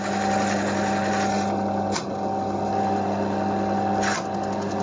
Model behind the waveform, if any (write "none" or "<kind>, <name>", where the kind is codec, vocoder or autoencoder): none